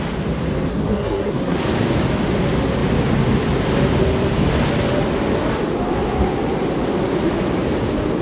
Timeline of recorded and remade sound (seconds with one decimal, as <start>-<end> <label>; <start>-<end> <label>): 0.0-0.7 recorded; 0.7-1.6 remade; 1.6-8.2 recorded